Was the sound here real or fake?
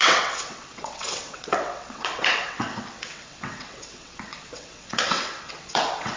fake